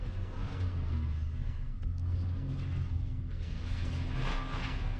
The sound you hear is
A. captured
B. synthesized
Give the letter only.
B